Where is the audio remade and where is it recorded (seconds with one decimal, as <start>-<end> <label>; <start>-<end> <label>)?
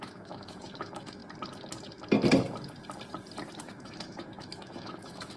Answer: 0.0-1.2 remade; 1.2-3.5 recorded; 3.5-5.4 remade